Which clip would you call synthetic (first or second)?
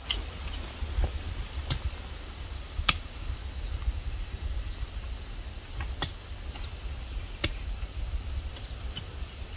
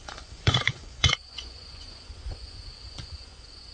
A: second